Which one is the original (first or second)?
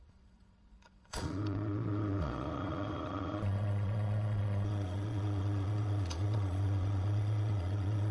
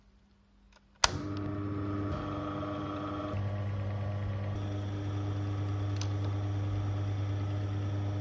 second